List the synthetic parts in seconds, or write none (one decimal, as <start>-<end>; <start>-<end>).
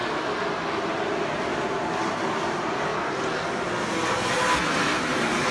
2.3-2.9; 4.1-5.5